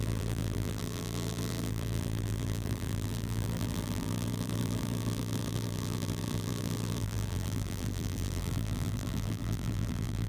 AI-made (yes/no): yes